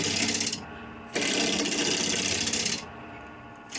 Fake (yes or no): no